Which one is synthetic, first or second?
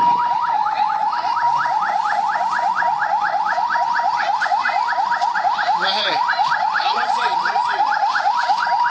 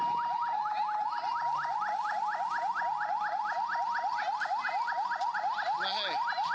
first